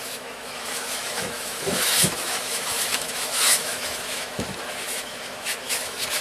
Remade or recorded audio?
remade